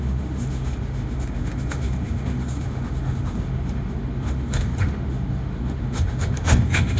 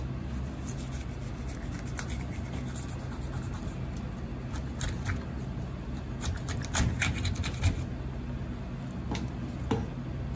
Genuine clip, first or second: second